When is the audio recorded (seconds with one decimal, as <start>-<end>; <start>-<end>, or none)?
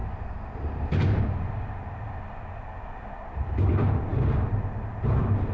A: 0.0-5.5